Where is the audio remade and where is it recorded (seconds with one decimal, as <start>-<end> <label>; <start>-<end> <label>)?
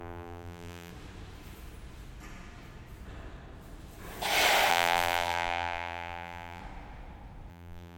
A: 0.0-0.9 remade; 0.9-4.7 recorded; 4.7-6.6 remade; 6.6-7.5 recorded; 7.5-8.0 remade